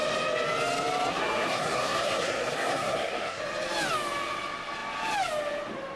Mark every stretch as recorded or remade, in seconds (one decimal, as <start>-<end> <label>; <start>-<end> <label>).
0.0-1.1 recorded; 1.1-3.4 remade; 3.4-6.0 recorded